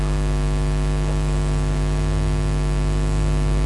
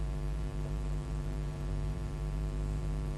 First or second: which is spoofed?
second